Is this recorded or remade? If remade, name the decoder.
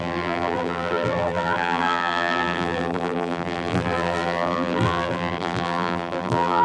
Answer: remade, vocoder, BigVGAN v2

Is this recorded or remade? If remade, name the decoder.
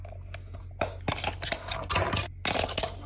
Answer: recorded